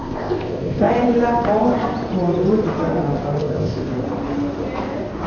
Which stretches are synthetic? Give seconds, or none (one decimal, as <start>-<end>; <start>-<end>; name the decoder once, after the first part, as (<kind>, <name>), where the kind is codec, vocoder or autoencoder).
0.0-0.9 (codec, ZipCodec); 3.4-3.9

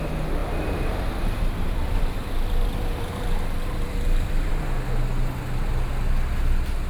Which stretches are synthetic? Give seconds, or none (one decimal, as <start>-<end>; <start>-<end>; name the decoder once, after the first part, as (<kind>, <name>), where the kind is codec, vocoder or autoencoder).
0.4-4.5 (vocoder, BigVGAN v2)